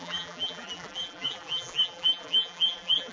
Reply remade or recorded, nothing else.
remade